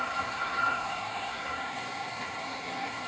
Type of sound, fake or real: fake